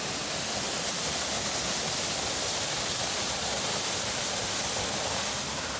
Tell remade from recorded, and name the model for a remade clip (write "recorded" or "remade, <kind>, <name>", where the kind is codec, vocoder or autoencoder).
recorded